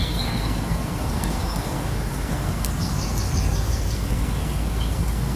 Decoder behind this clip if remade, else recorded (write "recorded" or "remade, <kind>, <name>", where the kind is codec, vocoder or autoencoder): remade, codec, SNAC